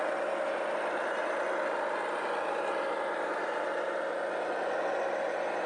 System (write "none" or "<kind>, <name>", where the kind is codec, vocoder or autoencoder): none